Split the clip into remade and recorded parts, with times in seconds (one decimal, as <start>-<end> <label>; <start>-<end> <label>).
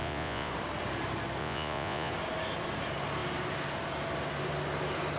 0.0-0.5 remade; 0.5-1.4 recorded; 1.4-2.1 remade; 2.1-5.2 recorded